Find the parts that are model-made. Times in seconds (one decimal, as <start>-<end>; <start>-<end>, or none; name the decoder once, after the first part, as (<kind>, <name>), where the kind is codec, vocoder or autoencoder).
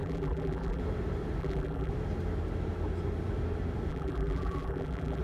0.0-0.8 (vocoder, BigVGAN v2); 1.4-1.9; 3.9-5.2